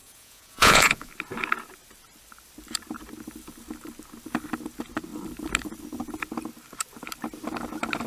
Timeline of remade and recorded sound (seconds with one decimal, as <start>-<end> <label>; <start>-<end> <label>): 0.0-1.1 remade; 1.1-8.1 recorded